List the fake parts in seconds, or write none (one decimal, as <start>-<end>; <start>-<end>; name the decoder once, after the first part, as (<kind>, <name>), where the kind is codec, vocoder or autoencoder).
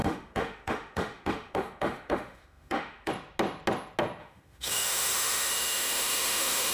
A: 0.0-3.1 (autoencoder, DAC-VAE); 4.2-6.7